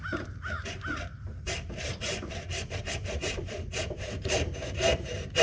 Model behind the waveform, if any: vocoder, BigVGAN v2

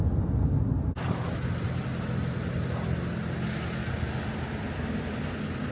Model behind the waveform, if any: none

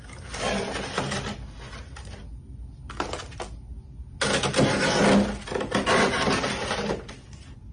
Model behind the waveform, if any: none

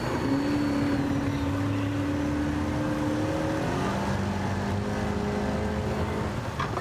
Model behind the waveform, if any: none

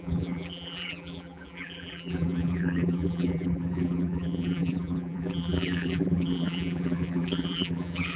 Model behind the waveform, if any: vocoder, BigVGAN v2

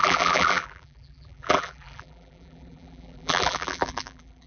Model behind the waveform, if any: vocoder, BigVGAN v2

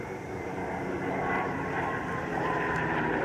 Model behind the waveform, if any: vocoder, BigVGAN v2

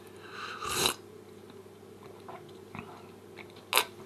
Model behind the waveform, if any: none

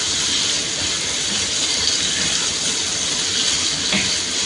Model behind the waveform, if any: none